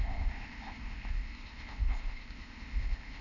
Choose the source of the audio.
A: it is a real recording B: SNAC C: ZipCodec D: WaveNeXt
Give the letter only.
C